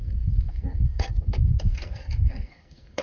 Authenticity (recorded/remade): remade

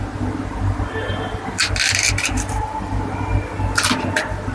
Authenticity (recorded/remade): recorded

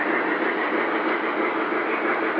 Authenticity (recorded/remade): recorded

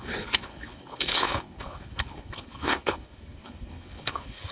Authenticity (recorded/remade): remade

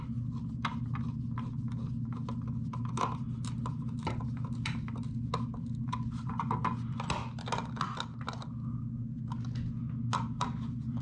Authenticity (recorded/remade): recorded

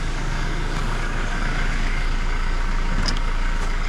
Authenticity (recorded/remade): remade